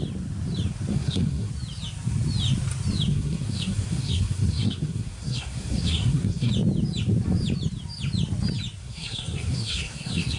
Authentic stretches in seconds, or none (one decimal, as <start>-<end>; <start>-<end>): 0.0-0.9; 1.5-3.1; 6.5-8.8